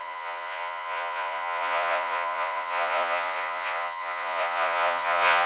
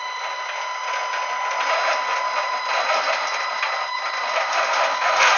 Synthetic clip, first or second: first